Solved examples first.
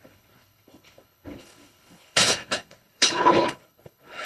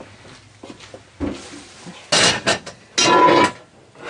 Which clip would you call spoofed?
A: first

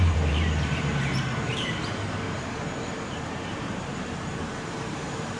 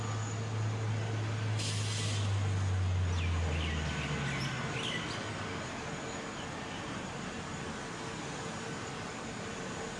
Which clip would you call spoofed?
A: first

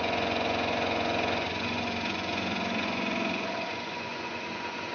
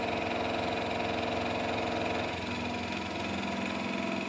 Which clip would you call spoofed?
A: first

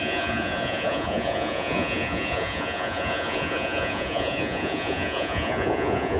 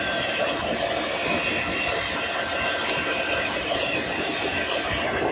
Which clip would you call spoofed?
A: first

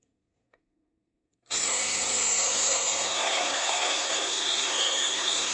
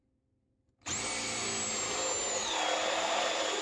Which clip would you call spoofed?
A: first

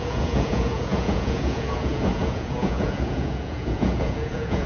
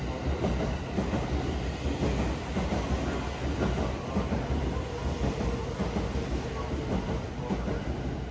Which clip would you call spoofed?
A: first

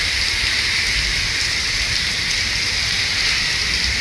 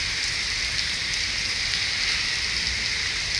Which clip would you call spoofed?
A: first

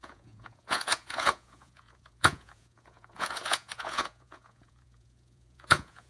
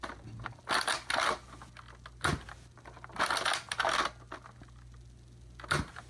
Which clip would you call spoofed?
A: first